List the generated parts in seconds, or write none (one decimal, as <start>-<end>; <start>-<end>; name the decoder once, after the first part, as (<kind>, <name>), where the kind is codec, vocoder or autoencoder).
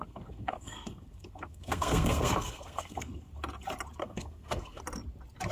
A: 0.0-3.3 (codec, SNAC); 4.0-4.8